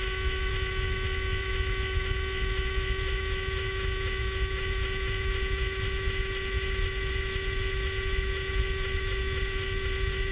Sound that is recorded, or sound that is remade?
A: recorded